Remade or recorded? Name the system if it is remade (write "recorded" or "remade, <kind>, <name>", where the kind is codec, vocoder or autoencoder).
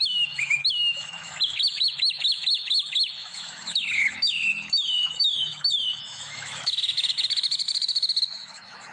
remade, autoencoder, DAC-VAE